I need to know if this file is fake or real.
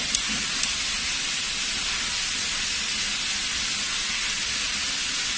real